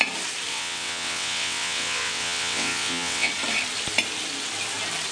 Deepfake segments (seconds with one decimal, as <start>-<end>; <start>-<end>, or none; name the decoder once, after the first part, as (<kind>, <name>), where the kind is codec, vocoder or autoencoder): 0.5-3.3 (vocoder, WaveNeXt)